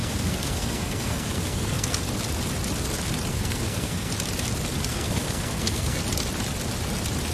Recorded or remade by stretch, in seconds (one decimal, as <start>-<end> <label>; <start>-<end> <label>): 0.0-2.0 remade; 2.0-3.3 recorded; 3.3-4.1 remade; 4.1-4.9 recorded; 4.9-6.0 remade; 6.0-7.3 recorded